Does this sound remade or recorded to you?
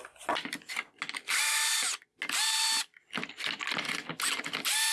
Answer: recorded